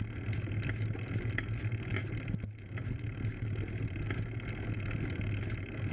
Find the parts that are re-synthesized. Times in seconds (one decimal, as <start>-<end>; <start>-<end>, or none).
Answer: none